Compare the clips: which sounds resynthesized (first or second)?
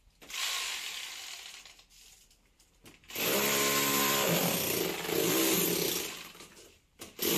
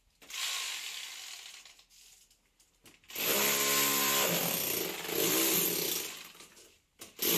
first